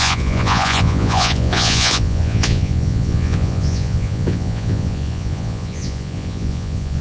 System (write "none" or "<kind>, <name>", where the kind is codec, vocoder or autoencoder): vocoder, Vocos